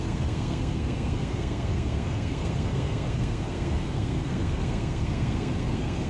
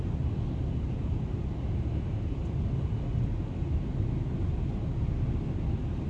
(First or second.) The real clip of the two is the second